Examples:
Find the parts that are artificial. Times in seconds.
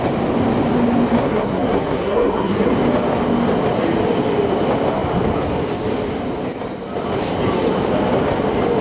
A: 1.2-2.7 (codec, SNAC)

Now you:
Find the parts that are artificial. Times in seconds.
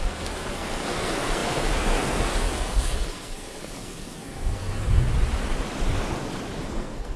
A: 0.0-5.1 (codec, SNAC); 6.6-7.2